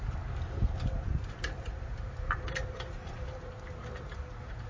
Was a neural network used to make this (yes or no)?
yes